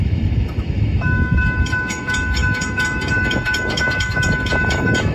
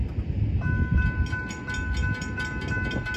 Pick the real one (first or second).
second